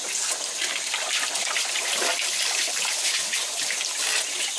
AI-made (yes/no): no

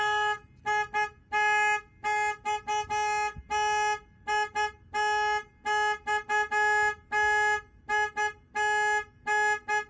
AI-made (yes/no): no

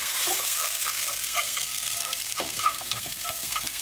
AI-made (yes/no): yes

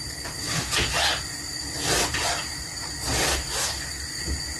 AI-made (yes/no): no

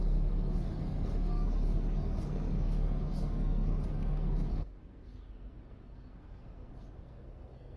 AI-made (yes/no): yes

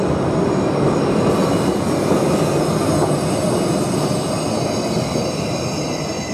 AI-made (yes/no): no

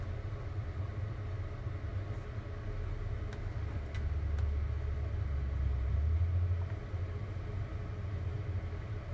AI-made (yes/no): no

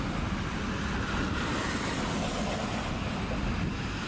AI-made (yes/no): no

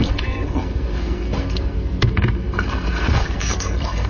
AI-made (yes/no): yes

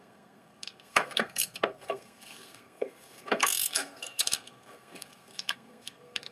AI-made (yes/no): yes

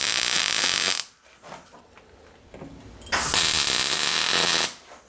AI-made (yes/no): no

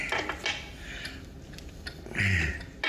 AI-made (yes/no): no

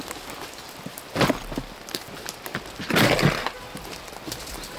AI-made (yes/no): no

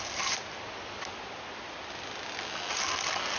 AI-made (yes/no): no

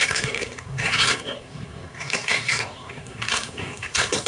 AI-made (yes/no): yes